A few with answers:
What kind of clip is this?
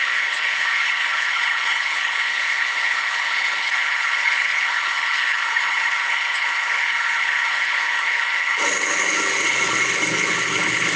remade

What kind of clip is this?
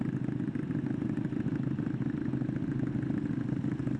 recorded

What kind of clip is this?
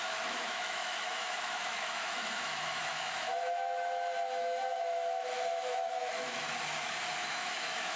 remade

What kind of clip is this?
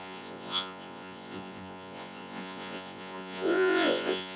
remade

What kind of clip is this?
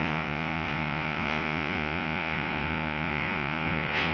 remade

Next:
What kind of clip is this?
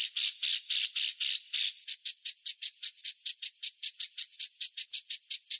recorded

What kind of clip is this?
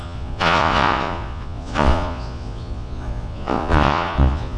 remade